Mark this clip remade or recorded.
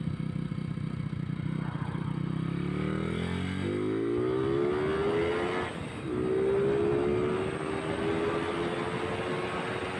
recorded